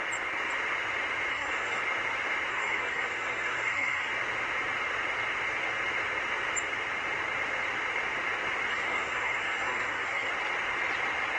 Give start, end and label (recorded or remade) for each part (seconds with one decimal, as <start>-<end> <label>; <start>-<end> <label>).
0.0-1.3 recorded; 1.3-1.8 remade; 1.8-2.5 recorded; 2.5-4.1 remade; 4.1-8.7 recorded; 8.7-10.3 remade; 10.3-11.4 recorded